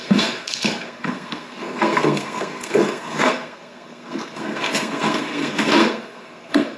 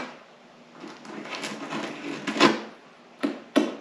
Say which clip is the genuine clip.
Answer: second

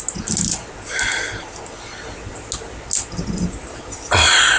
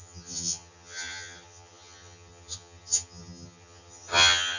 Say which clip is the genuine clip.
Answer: first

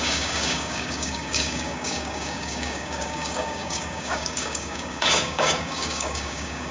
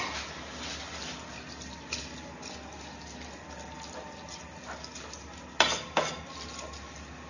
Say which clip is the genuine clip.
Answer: second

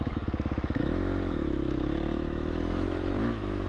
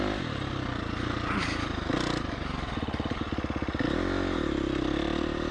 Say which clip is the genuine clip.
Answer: second